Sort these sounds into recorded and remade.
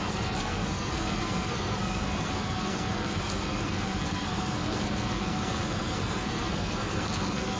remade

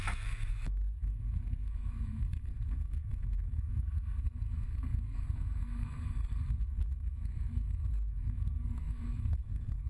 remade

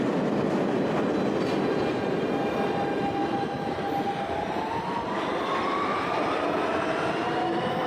recorded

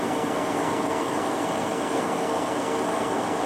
remade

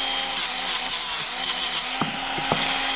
recorded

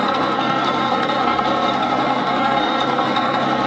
remade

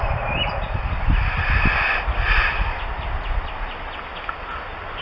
recorded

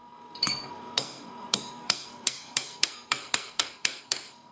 remade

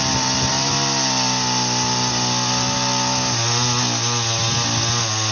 recorded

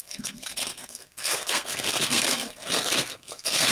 remade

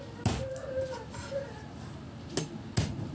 recorded